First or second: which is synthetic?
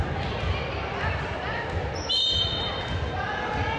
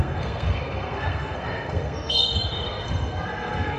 second